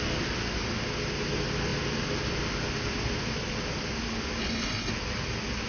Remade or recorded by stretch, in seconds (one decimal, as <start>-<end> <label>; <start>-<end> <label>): 0.0-4.4 recorded; 4.4-4.9 remade; 4.9-5.7 recorded